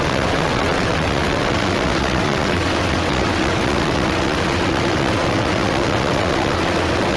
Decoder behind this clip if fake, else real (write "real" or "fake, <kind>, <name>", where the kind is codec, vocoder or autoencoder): fake, vocoder, WaveNeXt